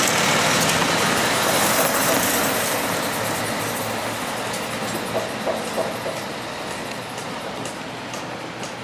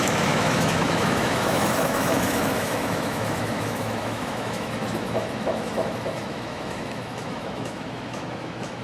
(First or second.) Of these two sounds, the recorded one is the first